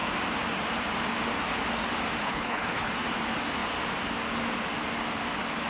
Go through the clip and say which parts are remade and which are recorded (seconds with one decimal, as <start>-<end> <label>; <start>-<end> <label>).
0.0-2.2 recorded; 2.2-2.9 remade; 2.9-5.7 recorded